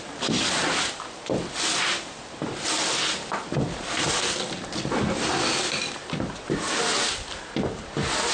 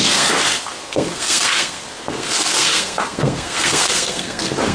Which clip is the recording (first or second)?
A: first